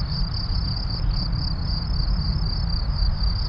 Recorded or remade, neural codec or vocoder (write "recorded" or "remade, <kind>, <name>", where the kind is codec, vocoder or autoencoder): recorded